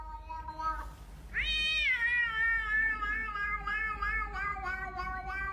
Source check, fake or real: real